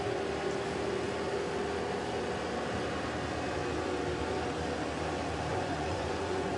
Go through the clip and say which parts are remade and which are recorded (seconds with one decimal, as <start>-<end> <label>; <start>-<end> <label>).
0.0-5.5 recorded; 5.5-6.6 remade

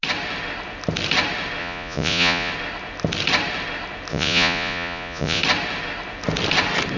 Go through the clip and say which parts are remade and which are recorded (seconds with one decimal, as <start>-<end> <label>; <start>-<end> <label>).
0.0-1.6 recorded; 1.6-2.5 remade; 2.5-4.1 recorded; 4.1-5.4 remade; 5.4-7.0 recorded

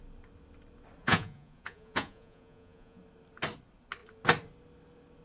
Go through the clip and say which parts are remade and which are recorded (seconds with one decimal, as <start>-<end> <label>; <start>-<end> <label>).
0.0-1.0 recorded; 1.0-3.0 remade; 3.0-5.2 recorded

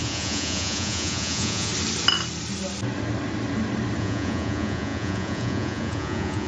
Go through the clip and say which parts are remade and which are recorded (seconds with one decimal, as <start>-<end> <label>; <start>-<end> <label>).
0.0-1.7 remade; 1.7-4.0 recorded; 4.0-6.5 remade

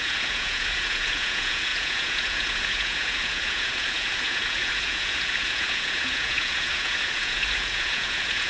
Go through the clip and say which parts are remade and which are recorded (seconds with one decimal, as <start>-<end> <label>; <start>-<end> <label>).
0.0-8.5 remade

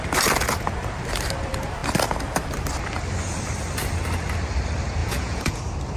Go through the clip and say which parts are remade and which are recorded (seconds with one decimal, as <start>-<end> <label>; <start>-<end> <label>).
0.0-5.0 recorded; 5.0-5.6 remade; 5.6-6.0 recorded

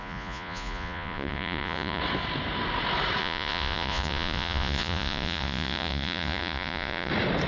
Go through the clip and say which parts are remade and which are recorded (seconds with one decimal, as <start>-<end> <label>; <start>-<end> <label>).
0.0-2.0 remade; 2.0-3.2 recorded; 3.2-7.1 remade; 7.1-7.5 recorded